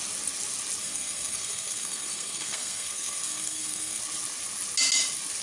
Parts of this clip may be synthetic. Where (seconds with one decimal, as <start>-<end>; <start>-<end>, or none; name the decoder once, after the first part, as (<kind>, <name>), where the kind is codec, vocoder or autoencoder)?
0.8-4.0 (codec, SNAC)